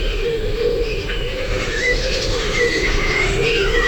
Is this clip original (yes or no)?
no